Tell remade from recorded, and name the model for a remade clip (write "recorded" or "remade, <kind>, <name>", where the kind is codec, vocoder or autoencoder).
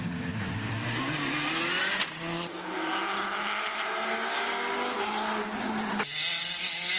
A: recorded